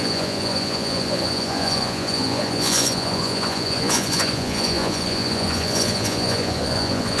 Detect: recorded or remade remade